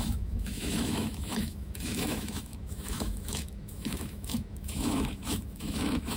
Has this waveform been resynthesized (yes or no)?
yes